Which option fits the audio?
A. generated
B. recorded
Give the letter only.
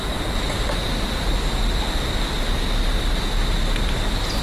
B